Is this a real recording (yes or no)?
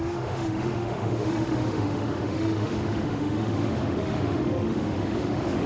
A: no